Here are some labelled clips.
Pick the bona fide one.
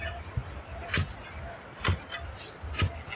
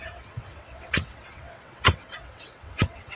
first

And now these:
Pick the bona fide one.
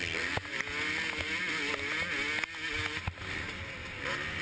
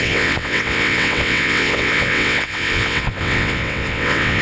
first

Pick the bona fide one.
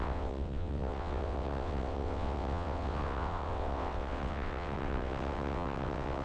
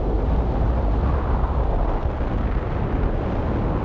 second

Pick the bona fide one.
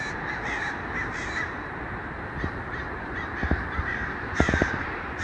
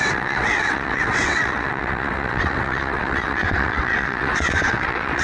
first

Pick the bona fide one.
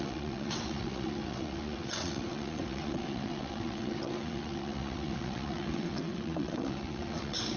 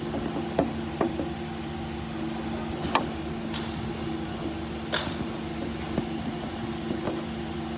second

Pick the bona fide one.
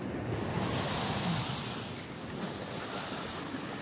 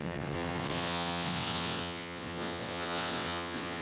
first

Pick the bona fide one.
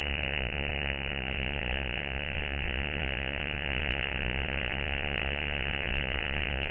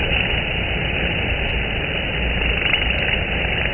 second